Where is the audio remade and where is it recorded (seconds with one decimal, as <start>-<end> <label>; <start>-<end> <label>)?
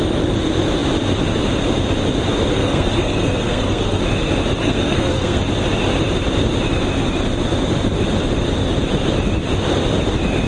0.0-2.5 recorded; 2.5-4.0 remade; 4.0-4.6 recorded; 4.6-5.4 remade; 5.4-10.5 recorded